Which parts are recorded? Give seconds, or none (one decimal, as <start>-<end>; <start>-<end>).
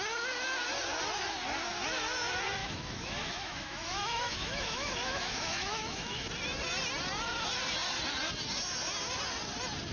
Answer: 0.0-2.6; 6.3-9.9